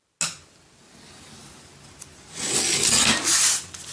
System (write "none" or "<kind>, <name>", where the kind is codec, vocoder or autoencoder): none